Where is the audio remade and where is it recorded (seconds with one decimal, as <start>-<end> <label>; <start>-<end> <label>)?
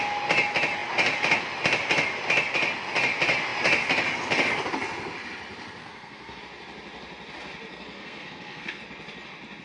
0.0-5.8 recorded; 5.8-6.4 remade; 6.4-7.7 recorded; 7.7-8.8 remade; 8.8-9.6 recorded